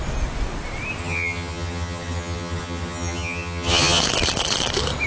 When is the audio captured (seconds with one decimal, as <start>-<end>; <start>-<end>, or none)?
0.0-1.0; 4.0-5.1